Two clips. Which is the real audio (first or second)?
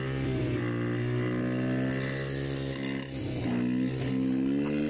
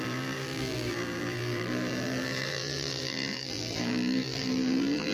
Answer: first